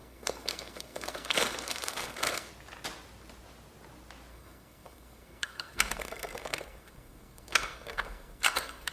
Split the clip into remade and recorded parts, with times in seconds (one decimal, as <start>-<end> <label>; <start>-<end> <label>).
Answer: 0.0-2.5 remade; 2.5-4.3 recorded; 4.3-8.9 remade